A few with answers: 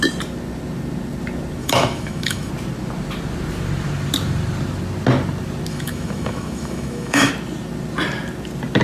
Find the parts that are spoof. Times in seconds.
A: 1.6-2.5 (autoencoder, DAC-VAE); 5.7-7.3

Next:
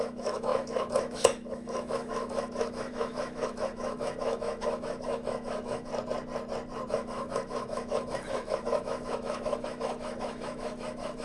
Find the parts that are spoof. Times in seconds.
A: 0.0-5.9 (autoencoder, DAC-VAE); 6.9-11.2

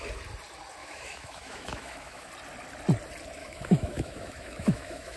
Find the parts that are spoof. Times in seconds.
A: 0.8-2.3 (autoencoder, DAC-VAE); 3.4-5.2